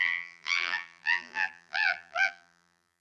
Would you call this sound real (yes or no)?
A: no